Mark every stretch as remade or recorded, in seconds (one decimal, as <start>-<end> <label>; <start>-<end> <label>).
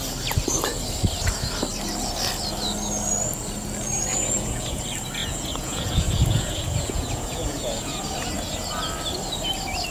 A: 0.0-4.1 recorded; 4.1-4.8 remade; 4.8-5.2 recorded; 5.2-8.0 remade; 8.0-9.9 recorded